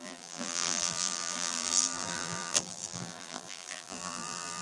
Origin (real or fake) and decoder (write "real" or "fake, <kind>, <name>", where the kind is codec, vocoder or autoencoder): fake, vocoder, BigVGAN v2